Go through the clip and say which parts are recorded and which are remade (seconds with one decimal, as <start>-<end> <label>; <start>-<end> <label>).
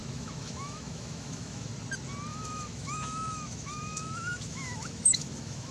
0.0-1.7 remade; 1.7-2.3 recorded; 2.3-5.7 remade